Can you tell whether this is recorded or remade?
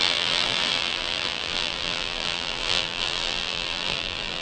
remade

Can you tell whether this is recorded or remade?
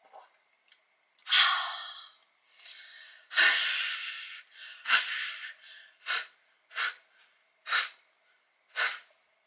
remade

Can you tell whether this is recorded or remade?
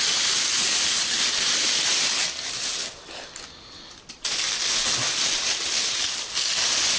recorded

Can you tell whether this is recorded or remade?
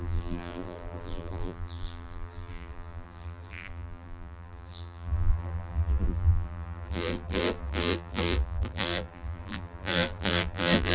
remade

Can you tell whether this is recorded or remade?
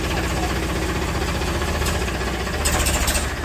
recorded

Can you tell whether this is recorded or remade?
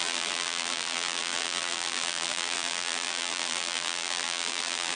remade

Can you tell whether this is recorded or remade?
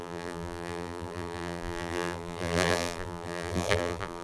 remade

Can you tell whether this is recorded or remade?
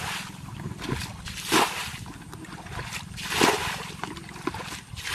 remade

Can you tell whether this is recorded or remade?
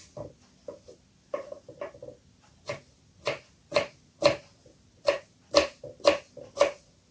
recorded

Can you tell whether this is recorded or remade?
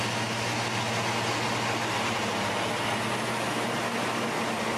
recorded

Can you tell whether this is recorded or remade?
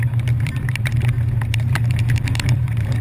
remade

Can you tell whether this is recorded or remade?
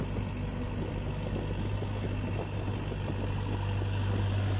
recorded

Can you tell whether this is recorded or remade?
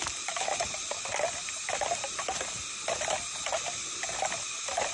recorded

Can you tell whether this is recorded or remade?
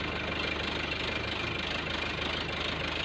recorded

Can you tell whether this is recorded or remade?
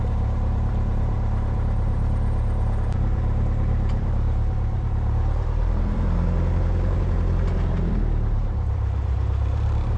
remade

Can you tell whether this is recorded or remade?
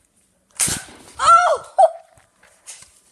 remade